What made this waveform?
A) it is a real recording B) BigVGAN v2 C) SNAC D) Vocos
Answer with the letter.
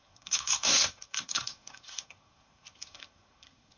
C